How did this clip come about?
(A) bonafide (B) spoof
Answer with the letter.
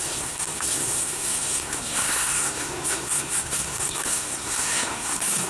B